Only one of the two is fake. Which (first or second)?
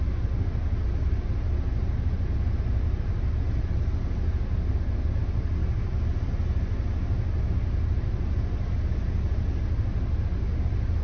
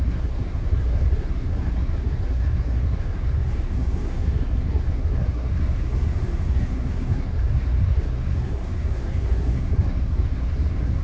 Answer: second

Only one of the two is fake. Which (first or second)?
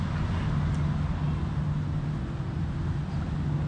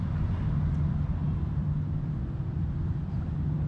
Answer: second